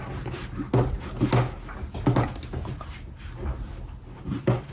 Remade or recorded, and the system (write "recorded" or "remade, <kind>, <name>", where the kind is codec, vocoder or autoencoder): recorded